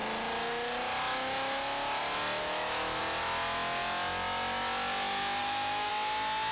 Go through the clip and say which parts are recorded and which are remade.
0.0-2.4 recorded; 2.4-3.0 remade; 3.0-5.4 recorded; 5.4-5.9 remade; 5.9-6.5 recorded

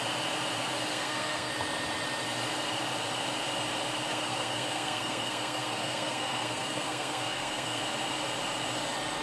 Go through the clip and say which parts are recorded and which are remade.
0.0-0.9 recorded; 0.9-1.5 remade; 1.5-4.1 recorded; 4.1-7.8 remade; 7.8-9.2 recorded

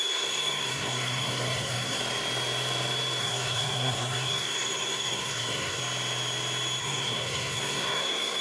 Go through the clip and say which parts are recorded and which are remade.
0.0-2.0 remade; 2.0-3.2 recorded; 3.2-5.8 remade; 5.8-6.8 recorded; 6.8-8.4 remade

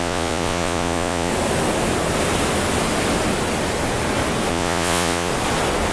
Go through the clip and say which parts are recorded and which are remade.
0.0-1.3 remade; 1.3-4.5 recorded; 4.5-5.3 remade; 5.3-5.9 recorded